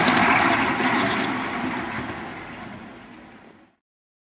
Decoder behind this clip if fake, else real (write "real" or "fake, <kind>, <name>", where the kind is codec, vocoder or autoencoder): real